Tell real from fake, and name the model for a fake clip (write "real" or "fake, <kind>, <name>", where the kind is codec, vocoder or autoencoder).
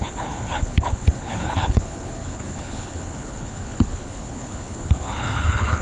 fake, codec, HILCodec